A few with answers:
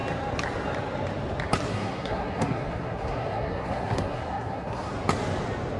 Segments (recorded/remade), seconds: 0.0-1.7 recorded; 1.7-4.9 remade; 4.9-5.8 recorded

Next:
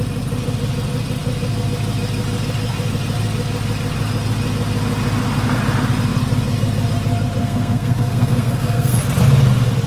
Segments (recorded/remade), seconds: 0.0-7.4 recorded; 7.4-9.0 remade; 9.0-9.9 recorded

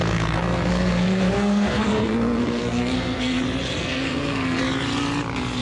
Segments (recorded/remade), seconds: 0.0-3.4 remade; 3.4-3.8 recorded; 3.8-4.6 remade; 4.6-5.6 recorded

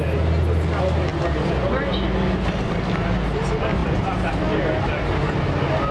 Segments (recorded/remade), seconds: 0.0-5.9 recorded

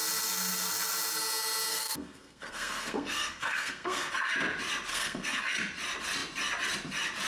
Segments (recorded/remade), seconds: 0.0-1.7 recorded; 1.7-4.1 remade; 4.1-4.9 recorded; 4.9-5.4 remade; 5.4-7.3 recorded

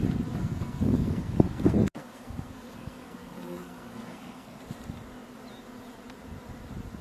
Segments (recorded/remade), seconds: 0.0-0.4 recorded; 0.4-4.6 remade; 4.6-7.0 recorded

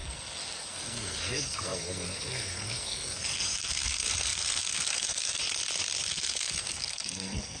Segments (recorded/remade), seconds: 0.0-5.4 remade; 5.4-6.1 recorded; 6.1-7.6 remade

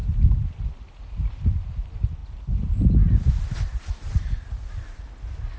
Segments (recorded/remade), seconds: 0.0-5.6 recorded